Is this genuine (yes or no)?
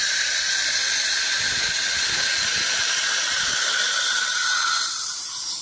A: yes